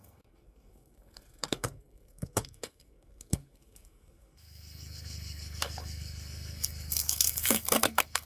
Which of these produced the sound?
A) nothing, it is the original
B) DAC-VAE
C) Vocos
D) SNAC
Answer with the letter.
D